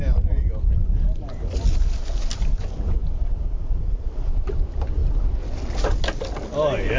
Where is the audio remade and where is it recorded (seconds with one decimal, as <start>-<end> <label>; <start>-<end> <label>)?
0.0-7.0 recorded